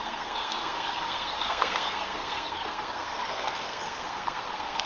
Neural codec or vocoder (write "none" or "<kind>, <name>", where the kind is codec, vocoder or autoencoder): codec, SNAC